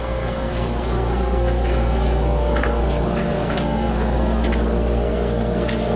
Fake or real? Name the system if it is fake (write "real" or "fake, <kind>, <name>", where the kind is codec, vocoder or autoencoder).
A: fake, codec, SNAC